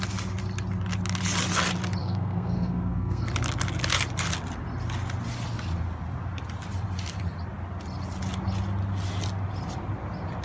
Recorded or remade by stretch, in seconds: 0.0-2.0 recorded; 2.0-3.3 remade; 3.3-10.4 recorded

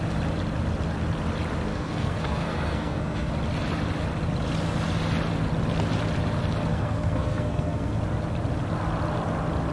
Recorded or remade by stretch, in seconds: 0.0-1.7 recorded; 1.7-3.3 remade; 3.3-6.7 recorded; 6.7-8.0 remade; 8.0-9.7 recorded

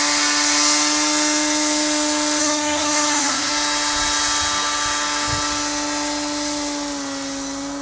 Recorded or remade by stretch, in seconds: 0.0-2.4 recorded; 2.4-3.5 remade; 3.5-7.8 recorded

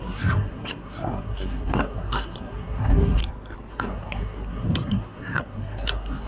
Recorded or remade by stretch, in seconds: 0.0-3.2 remade; 3.2-3.7 recorded; 3.7-6.3 remade

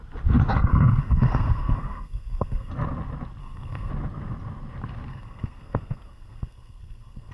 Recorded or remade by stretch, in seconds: 0.0-0.7 recorded; 0.7-2.7 remade; 2.7-3.4 recorded; 3.4-3.9 remade; 3.9-5.1 recorded; 5.1-7.3 remade